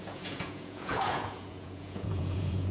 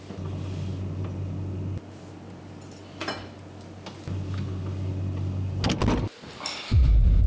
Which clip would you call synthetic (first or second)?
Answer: first